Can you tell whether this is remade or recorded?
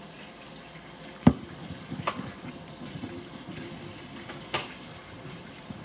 recorded